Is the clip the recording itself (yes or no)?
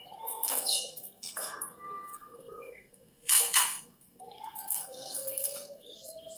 no